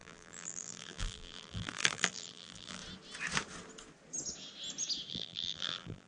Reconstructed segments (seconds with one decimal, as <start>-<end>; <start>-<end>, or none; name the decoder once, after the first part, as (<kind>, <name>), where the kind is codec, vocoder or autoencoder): 0.0-2.8 (vocoder, BigVGAN v2); 5.1-6.1